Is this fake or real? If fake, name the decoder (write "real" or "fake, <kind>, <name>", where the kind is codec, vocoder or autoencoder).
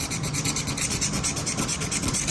real